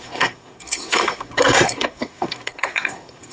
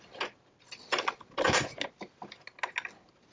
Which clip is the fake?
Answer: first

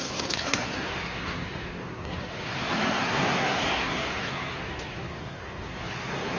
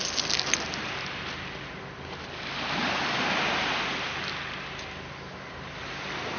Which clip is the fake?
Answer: first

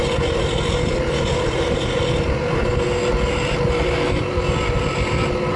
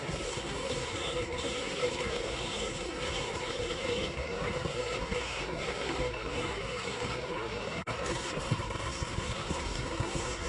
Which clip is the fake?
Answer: second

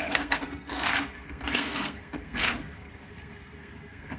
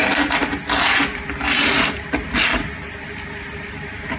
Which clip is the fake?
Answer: first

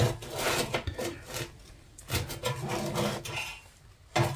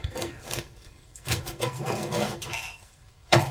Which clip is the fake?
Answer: second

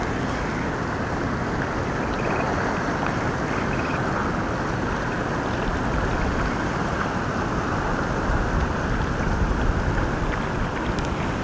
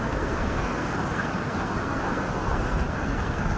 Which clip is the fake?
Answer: second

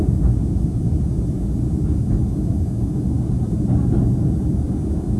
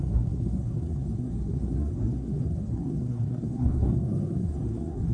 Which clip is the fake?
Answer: second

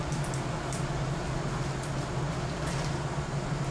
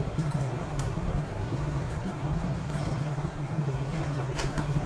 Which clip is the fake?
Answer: second